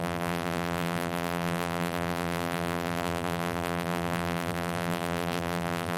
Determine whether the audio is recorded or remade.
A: remade